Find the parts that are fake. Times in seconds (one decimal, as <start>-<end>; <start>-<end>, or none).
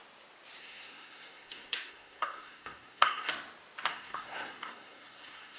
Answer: 0.6-3.3; 3.9-5.6